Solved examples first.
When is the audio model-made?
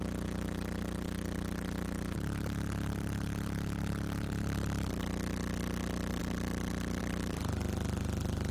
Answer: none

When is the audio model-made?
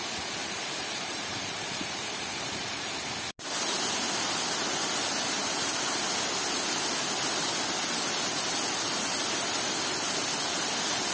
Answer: 0.4-2.9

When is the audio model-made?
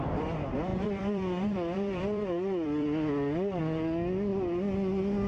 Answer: 0.7-3.6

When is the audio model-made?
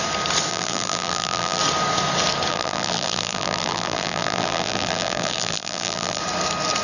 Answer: 0.5-1.6; 2.5-6.2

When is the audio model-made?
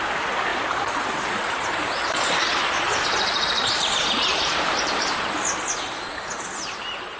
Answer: 0.5-1.0; 2.9-5.2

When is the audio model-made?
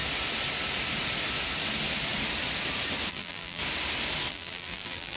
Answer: 3.1-3.6; 4.3-5.2